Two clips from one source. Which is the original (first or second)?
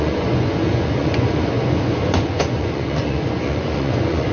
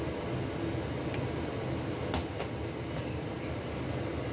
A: second